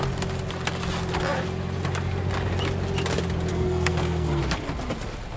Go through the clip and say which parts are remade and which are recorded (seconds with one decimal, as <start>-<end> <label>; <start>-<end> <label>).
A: 0.0-3.5 recorded; 3.5-4.4 remade; 4.4-5.4 recorded